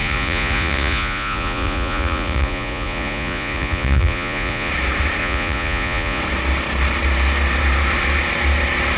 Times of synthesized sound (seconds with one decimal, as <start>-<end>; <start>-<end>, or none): 0.0-4.7; 5.2-6.2